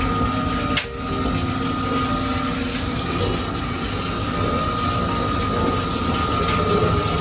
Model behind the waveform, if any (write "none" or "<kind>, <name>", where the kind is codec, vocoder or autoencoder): none